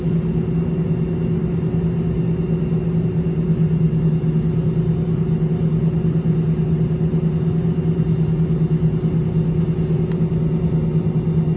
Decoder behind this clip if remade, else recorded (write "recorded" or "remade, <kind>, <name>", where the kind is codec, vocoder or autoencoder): recorded